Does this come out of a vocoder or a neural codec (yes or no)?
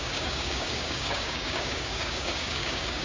yes